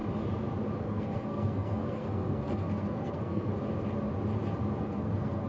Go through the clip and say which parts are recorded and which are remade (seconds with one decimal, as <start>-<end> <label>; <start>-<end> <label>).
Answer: 0.0-0.8 recorded; 0.8-3.5 remade; 3.5-4.8 recorded; 4.8-5.5 remade